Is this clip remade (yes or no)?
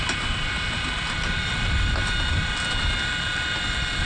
no